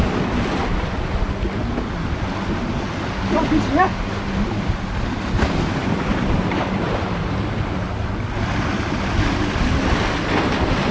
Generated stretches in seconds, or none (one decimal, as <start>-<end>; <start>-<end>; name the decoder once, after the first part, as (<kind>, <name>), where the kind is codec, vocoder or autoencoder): none